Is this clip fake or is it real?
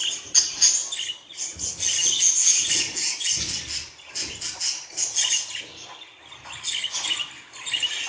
real